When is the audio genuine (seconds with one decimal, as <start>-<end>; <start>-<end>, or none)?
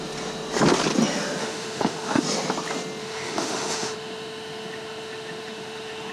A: 0.0-1.4; 2.2-3.0